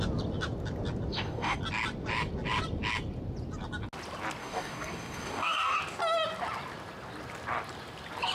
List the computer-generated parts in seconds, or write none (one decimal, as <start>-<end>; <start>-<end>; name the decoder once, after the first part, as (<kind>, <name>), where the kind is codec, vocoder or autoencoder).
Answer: 1.1-1.6 (codec, DAC); 4.4-5.8